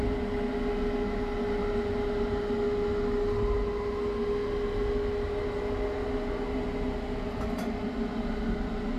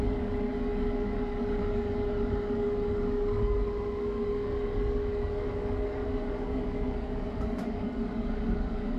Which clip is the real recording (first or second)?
first